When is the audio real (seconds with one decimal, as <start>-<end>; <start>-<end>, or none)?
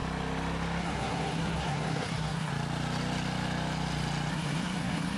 0.0-0.8; 2.5-4.3